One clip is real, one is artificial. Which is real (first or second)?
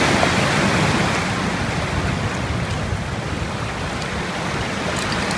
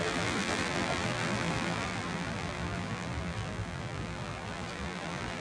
first